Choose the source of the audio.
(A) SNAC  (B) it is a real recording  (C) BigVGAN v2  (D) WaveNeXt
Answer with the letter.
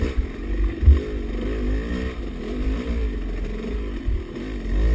B